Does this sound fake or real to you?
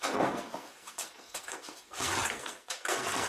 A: fake